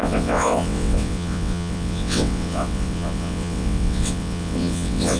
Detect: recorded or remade remade